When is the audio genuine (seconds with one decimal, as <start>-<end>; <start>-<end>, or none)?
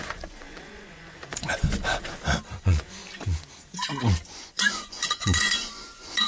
1.6-2.6; 3.0-4.3